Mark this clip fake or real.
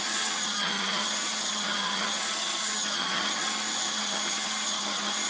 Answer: fake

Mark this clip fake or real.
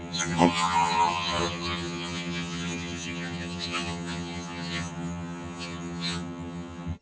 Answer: fake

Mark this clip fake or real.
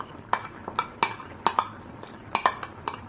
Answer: real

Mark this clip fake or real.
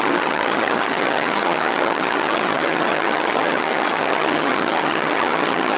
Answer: fake